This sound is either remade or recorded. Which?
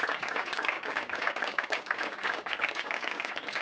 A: remade